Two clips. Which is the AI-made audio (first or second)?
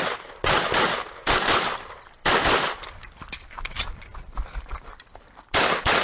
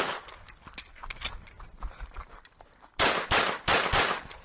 first